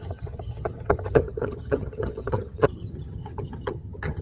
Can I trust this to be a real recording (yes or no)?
no